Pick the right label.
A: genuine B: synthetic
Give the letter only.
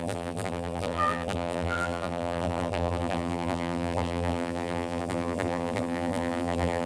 B